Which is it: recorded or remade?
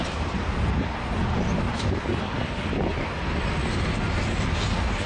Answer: recorded